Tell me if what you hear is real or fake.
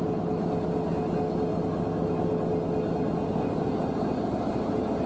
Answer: real